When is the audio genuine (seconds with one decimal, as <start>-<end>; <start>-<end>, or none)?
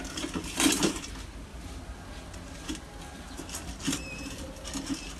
0.0-5.2